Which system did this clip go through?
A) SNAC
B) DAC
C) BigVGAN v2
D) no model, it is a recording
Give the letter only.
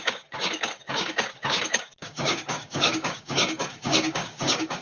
B